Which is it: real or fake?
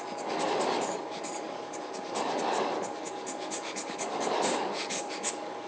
fake